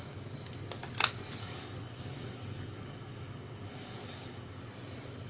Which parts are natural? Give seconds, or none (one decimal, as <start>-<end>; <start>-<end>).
0.0-1.4; 4.6-5.3

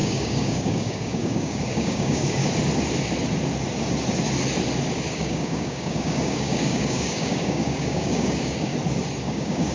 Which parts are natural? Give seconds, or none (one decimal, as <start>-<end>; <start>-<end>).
2.4-5.1; 8.7-9.2

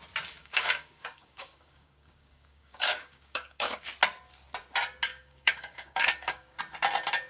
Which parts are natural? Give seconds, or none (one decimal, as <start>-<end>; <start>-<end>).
0.0-0.4; 3.9-5.1; 6.6-7.3

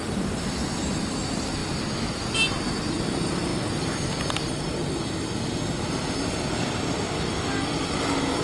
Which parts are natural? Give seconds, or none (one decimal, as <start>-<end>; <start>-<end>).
0.0-8.4

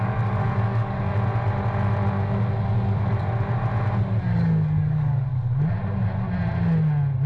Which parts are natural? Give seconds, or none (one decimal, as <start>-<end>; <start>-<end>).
1.1-4.2; 5.3-7.3